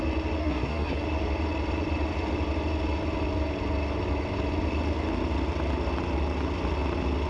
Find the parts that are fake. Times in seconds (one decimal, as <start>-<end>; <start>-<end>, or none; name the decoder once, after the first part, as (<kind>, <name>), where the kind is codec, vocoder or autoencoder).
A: 0.4-1.0 (codec, SNAC)